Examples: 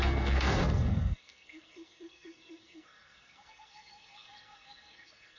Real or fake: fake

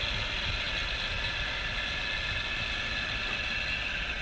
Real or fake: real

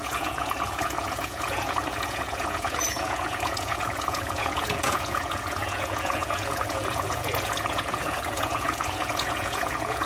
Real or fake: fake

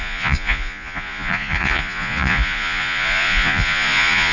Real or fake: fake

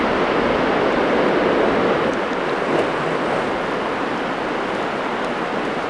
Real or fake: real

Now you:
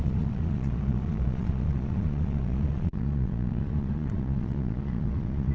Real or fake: fake